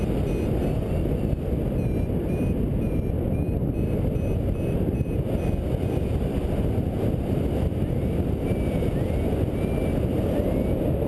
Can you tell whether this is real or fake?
real